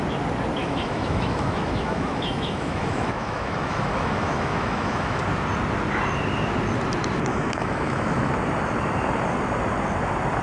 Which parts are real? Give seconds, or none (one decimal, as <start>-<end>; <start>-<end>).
0.0-0.6; 5.2-7.3; 8.3-10.4